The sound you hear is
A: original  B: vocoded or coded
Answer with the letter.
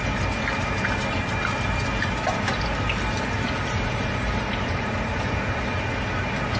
A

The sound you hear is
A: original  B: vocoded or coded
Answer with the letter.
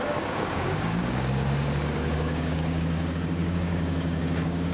B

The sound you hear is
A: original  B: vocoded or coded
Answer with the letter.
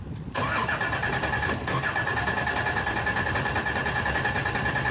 A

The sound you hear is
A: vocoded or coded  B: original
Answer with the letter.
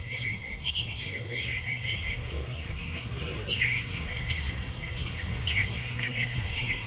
A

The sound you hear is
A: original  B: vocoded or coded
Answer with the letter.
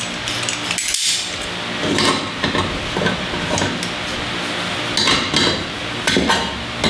A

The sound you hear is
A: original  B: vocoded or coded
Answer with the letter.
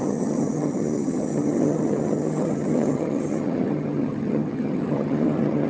B